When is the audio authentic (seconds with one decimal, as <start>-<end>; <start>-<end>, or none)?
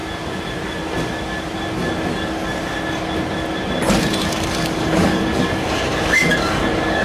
0.0-4.2